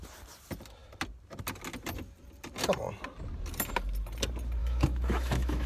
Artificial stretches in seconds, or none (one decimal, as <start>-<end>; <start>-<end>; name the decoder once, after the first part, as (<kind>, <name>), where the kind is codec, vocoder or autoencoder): 4.6-5.7 (autoencoder, DAC-VAE)